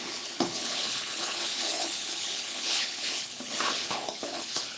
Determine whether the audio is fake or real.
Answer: fake